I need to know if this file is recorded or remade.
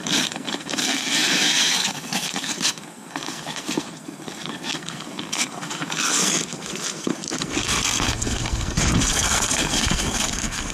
remade